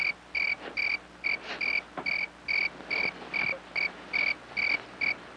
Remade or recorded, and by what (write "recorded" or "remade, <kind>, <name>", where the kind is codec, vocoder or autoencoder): recorded